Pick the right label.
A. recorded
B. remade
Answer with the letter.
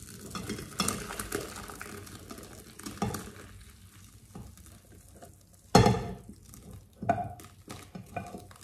A